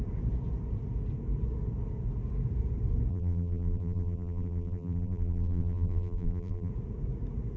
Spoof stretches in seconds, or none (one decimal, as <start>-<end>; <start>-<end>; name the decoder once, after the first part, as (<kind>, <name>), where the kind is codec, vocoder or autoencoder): 3.1-6.7 (vocoder, BigVGAN v2)